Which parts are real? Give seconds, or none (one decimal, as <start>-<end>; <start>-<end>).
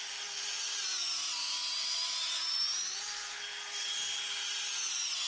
0.0-5.3